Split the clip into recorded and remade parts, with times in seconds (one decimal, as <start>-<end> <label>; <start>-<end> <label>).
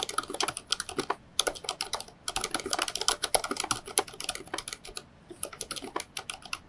0.0-6.7 recorded